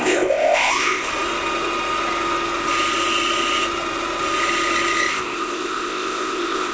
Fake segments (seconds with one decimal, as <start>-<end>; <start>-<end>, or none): 0.0-1.1; 5.1-6.7